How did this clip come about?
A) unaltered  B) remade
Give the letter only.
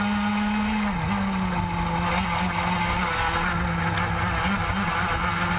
A